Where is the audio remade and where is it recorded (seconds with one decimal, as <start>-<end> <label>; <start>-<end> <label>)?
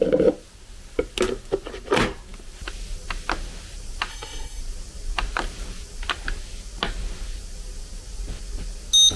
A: 0.0-4.1 recorded; 4.1-4.6 remade; 4.6-9.2 recorded